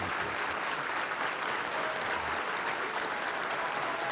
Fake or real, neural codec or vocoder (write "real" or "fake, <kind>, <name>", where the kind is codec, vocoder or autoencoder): real